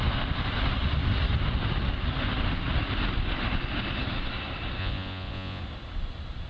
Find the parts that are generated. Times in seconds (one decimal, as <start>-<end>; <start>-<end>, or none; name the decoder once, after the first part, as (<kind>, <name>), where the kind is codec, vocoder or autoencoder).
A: 4.8-5.6 (vocoder, Vocos)